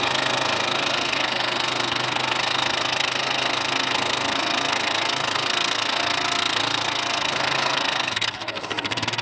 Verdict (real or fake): fake